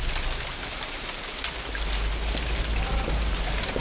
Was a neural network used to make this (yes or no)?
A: no